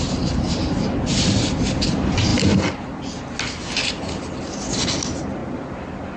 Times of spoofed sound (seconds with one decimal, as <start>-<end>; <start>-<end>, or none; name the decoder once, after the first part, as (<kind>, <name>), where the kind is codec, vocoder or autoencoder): none